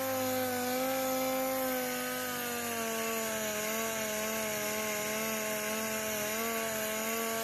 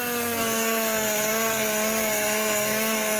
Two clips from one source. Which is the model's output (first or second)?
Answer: second